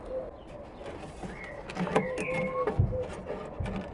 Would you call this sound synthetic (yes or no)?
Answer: no